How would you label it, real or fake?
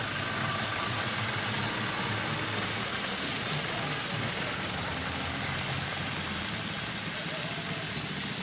real